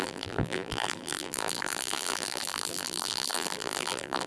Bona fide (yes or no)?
no